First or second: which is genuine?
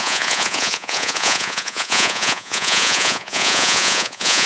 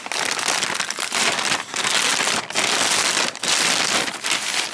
second